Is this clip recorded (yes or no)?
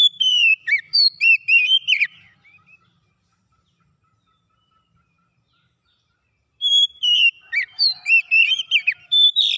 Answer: no